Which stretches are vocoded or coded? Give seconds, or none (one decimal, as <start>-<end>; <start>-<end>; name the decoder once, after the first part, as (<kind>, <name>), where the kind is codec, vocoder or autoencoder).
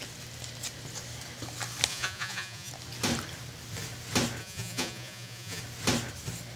1.9-2.7 (vocoder, Vocos); 4.4-5.6